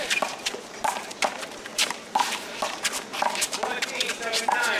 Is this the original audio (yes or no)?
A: no